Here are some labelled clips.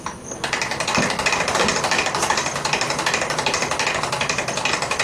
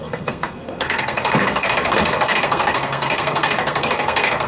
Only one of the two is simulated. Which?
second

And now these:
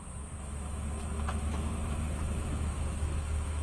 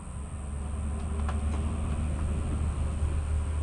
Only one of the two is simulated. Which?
first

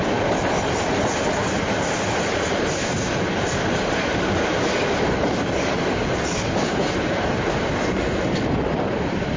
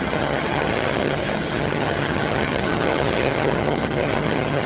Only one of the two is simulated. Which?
second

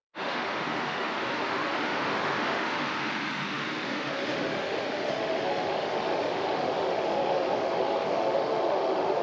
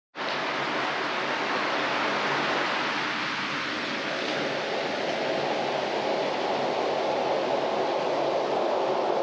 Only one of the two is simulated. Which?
first